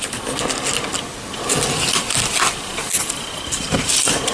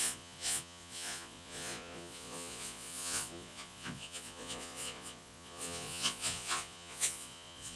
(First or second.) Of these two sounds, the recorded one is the first